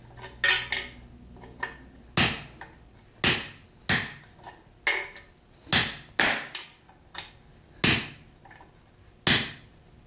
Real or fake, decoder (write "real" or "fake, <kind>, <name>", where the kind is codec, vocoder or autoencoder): real